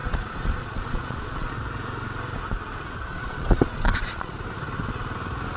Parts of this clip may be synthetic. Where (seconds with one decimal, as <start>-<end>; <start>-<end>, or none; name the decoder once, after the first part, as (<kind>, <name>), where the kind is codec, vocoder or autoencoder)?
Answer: 0.0-1.5 (vocoder, Vocos); 3.1-4.3